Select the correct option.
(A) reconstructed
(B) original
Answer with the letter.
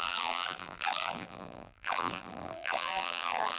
A